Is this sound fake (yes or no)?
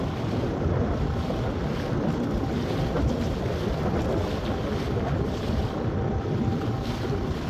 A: no